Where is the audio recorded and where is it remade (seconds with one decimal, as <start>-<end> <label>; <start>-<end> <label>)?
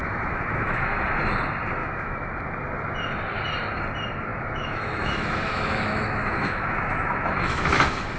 0.0-1.2 remade; 1.2-1.8 recorded; 1.8-2.3 remade; 2.3-4.3 recorded; 4.3-8.2 remade